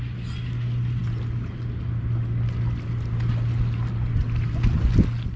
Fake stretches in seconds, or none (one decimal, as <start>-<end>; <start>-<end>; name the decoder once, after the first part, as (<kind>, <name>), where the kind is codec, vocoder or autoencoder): none

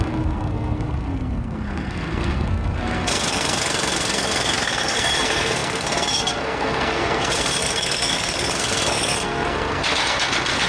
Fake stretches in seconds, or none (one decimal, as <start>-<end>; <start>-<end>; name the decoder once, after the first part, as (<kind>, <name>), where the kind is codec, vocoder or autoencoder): 0.0-10.7 (codec, SNAC)

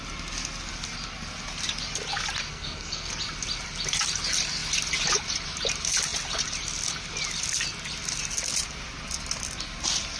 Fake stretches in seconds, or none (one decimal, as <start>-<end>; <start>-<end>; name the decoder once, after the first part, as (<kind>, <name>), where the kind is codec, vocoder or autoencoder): 2.5-3.1 (codec, SNAC)

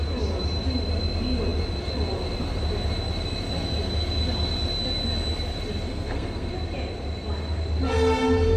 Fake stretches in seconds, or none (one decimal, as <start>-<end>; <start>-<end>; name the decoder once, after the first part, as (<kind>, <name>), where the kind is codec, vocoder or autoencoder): 5.9-6.5 (codec, SNAC)

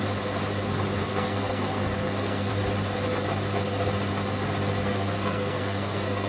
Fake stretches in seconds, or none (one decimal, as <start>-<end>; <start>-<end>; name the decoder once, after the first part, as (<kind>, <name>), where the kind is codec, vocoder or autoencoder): 1.0-2.5 (codec, SNAC); 4.8-6.3

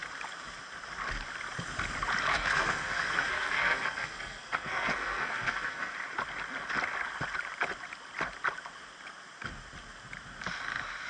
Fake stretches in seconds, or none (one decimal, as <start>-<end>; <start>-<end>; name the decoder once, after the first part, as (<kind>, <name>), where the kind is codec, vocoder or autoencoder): 2.3-5.9 (codec, SNAC)